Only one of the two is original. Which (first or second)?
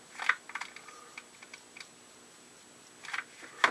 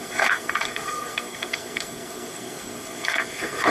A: first